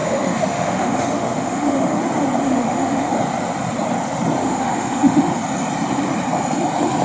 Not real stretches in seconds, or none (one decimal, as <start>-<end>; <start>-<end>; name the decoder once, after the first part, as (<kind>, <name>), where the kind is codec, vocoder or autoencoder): 0.0-2.0 (autoencoder, DAC-VAE); 2.4-3.1; 4.4-5.3